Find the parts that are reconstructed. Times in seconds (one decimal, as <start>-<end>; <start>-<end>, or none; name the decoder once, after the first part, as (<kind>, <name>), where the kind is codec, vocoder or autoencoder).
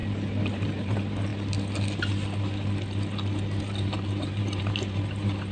0.5-1.3 (vocoder, BigVGAN v2); 3.6-5.5